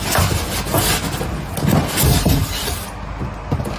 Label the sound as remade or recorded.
recorded